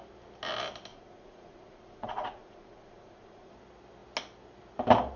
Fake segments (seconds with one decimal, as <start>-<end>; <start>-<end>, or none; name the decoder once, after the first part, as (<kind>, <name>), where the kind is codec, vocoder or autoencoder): 0.9-3.5 (vocoder, Vocos)